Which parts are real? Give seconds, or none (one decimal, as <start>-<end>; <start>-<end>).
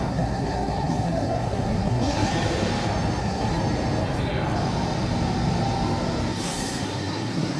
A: 2.3-3.2; 3.6-6.4